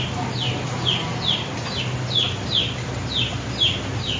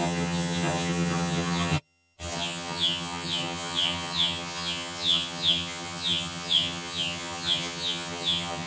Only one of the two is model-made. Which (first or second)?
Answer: second